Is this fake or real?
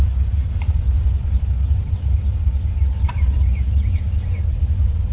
real